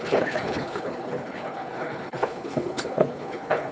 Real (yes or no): no